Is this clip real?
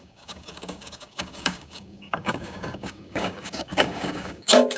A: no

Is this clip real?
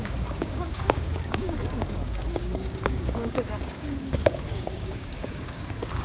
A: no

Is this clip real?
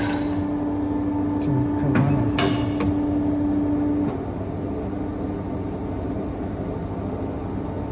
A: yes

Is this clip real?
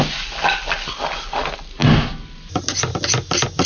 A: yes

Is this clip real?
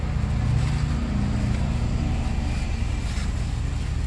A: yes